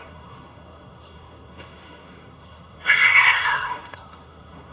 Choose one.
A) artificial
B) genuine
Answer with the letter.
A